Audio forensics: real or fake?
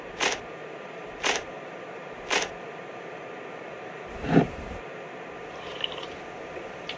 fake